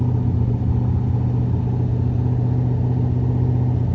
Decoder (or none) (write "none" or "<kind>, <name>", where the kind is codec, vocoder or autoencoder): none